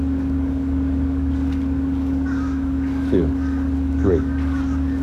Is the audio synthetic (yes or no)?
yes